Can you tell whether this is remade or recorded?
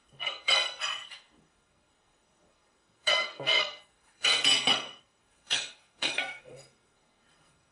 remade